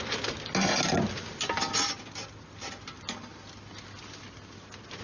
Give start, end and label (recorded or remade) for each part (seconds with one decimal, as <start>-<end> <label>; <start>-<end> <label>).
0.0-5.0 recorded